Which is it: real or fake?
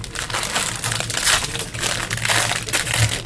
real